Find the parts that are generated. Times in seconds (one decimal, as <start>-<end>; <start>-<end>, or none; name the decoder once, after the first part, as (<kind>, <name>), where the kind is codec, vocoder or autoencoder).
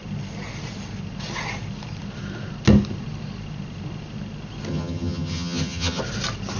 4.7-6.0 (vocoder, HiFi-GAN)